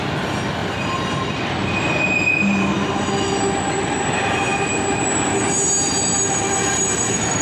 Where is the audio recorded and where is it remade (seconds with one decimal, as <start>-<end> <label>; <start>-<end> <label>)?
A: 0.0-7.4 recorded